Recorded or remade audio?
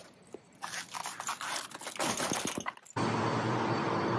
recorded